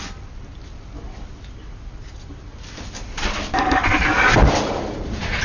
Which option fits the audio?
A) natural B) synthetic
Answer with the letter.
A